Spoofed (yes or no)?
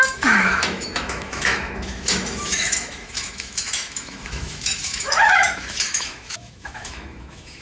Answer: yes